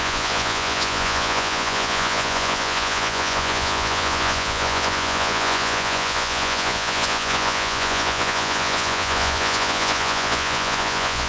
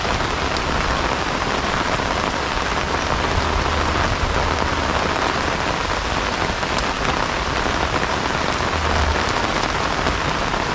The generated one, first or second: first